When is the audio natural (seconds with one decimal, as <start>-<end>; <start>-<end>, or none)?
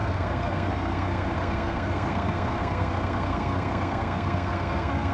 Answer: none